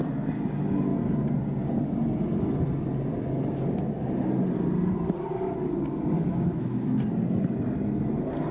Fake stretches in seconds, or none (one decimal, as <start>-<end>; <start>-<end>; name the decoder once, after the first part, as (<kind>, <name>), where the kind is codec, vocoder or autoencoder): 6.3-6.9 (autoencoder, DAC-VAE)